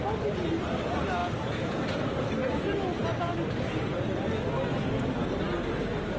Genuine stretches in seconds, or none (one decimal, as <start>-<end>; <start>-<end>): 0.0-6.2